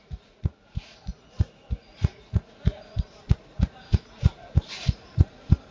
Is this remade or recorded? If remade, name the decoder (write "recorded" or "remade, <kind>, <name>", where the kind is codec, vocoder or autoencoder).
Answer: remade, vocoder, Vocos